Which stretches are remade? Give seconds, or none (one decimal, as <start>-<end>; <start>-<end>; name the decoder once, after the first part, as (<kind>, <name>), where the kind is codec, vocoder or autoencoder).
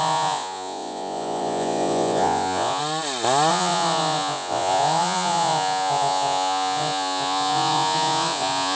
0.0-2.8 (vocoder, Vocos); 3.5-8.8